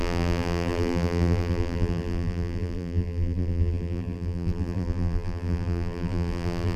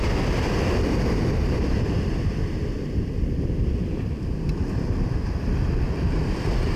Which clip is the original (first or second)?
second